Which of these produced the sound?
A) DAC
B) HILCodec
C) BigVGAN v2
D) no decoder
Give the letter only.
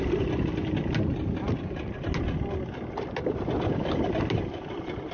D